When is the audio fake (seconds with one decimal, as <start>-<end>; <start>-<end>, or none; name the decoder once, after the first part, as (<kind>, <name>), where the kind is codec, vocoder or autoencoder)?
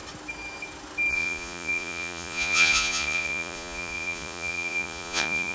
1.1-5.5 (vocoder, Vocos)